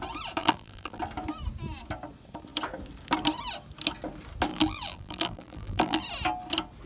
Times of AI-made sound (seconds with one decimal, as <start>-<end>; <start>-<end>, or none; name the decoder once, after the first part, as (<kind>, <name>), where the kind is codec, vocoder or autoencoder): 0.4-1.0 (vocoder, BigVGAN v2); 4.5-6.0